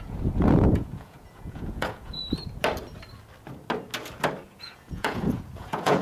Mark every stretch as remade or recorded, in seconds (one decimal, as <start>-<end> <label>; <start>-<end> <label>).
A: 0.0-2.2 remade; 2.2-4.5 recorded; 4.5-6.0 remade